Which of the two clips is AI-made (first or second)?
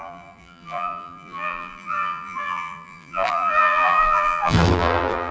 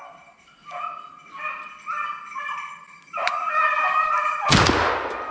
first